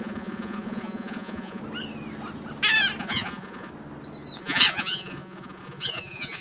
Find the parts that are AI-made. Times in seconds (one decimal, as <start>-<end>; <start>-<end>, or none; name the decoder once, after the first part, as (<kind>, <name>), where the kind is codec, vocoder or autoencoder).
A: 0.0-1.6 (vocoder, Vocos); 3.0-3.7; 4.4-6.4